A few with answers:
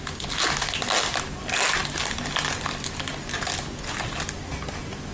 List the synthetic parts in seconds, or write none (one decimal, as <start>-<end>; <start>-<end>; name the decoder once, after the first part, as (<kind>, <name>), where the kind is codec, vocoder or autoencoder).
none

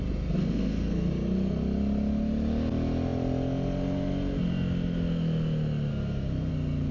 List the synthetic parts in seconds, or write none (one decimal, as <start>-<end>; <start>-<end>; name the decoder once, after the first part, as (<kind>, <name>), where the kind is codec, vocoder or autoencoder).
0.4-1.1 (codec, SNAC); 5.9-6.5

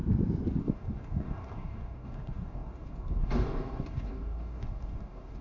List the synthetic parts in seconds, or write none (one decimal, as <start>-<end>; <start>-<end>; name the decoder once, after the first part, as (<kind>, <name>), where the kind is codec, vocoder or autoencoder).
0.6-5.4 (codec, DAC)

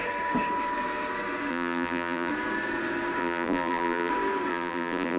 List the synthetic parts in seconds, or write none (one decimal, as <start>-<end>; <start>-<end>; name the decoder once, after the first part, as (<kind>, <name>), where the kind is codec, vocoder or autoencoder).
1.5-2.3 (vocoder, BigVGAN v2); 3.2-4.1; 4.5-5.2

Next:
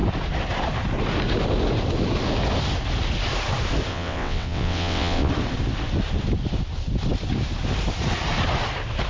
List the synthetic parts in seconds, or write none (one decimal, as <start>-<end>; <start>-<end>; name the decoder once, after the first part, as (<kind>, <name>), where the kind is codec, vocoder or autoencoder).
3.9-5.3 (vocoder, WaveNeXt)